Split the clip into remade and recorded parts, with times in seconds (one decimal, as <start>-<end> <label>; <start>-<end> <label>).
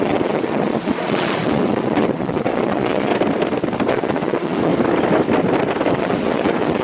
0.0-3.1 remade; 3.1-3.9 recorded; 3.9-4.7 remade; 4.7-5.9 recorded; 5.9-6.8 remade